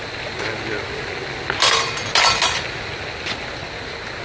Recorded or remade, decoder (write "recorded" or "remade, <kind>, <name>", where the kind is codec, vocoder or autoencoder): recorded